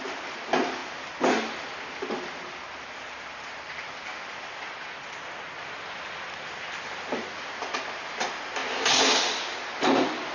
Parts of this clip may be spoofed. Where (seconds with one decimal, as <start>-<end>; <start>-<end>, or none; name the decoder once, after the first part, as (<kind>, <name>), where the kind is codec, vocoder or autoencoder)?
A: none

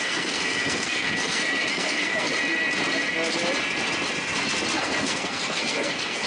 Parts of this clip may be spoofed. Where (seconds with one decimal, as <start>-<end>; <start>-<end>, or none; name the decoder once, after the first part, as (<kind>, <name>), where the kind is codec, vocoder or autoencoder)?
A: 0.0-2.3 (codec, SNAC); 4.8-6.3

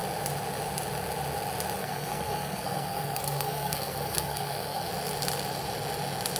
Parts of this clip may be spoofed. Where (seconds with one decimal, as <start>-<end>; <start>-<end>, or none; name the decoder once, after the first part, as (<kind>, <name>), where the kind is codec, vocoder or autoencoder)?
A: 1.8-4.9 (codec, SNAC)

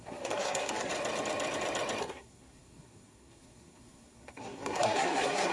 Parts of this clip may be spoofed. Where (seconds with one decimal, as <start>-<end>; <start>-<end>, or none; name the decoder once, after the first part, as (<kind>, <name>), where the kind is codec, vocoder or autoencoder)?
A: 0.0-0.9 (codec, SNAC); 2.0-5.5

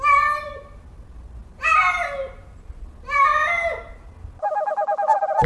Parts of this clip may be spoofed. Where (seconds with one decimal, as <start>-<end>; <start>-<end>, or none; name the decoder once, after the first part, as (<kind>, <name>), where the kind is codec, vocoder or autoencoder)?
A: none

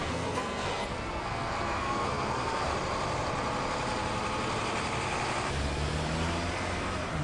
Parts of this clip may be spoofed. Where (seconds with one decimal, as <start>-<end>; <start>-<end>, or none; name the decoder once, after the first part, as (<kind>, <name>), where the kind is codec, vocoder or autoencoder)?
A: 0.0-2.7 (codec, SNAC)

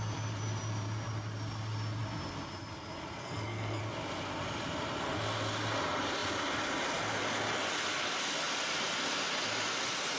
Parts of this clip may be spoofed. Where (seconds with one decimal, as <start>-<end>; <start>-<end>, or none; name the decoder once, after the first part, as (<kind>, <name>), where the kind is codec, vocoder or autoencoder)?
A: 3.2-3.8 (codec, SNAC)